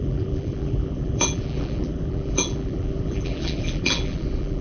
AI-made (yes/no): yes